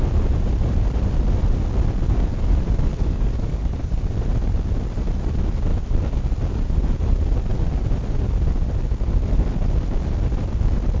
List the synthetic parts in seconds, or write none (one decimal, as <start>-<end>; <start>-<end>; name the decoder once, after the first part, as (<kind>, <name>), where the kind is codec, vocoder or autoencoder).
2.9-4.0 (codec, DAC)